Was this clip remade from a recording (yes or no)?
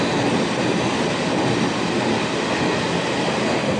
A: no